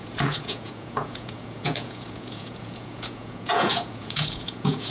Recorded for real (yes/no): no